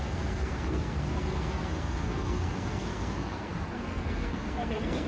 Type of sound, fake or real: fake